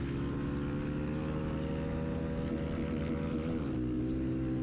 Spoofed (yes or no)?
no